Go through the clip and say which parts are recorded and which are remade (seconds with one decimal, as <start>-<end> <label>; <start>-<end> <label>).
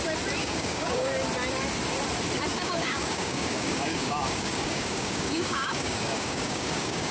0.0-0.4 recorded; 0.4-1.1 remade; 1.1-2.5 recorded; 2.5-7.1 remade